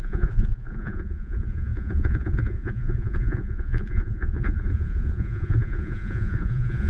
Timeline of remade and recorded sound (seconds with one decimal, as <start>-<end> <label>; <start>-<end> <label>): 0.0-6.9 remade